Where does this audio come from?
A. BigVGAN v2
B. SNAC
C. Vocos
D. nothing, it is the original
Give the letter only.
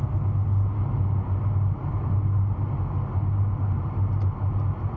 D